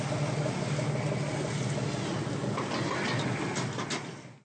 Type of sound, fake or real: real